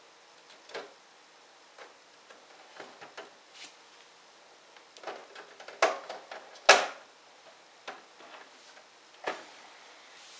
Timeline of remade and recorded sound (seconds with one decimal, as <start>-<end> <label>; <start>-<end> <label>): 0.0-10.4 recorded